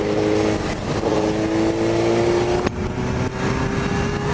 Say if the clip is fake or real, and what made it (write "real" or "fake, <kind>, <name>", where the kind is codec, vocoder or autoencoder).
real